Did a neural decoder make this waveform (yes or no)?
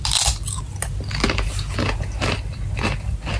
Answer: no